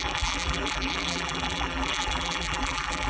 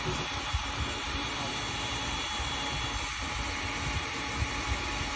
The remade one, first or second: first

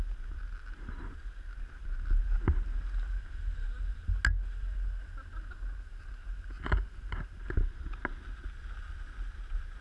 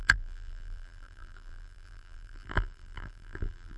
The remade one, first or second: second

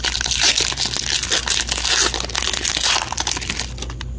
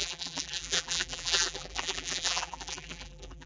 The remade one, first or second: second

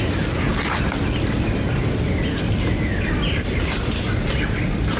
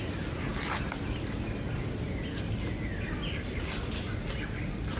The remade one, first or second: first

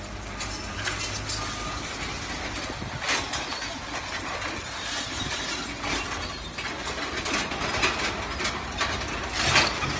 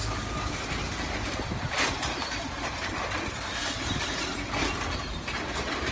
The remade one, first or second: second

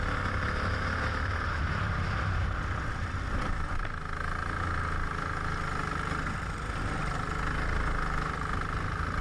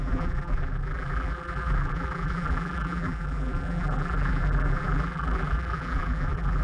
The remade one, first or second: second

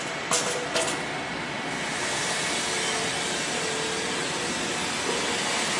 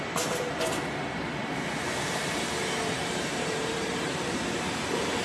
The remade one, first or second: second